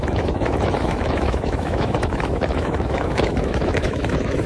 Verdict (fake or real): fake